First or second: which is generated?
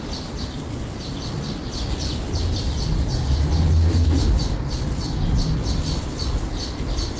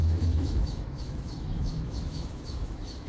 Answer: second